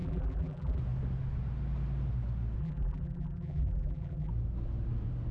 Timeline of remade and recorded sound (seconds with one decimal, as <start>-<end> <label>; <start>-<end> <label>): 0.0-0.8 remade; 0.8-2.6 recorded; 2.6-4.3 remade; 4.3-5.3 recorded